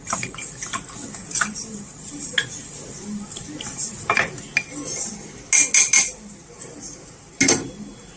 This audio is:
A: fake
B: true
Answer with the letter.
B